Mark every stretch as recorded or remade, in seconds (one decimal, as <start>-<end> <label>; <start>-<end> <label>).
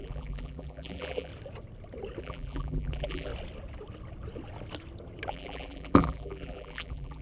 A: 0.0-1.3 remade; 1.3-2.2 recorded; 2.2-3.3 remade; 3.3-5.3 recorded; 5.3-7.2 remade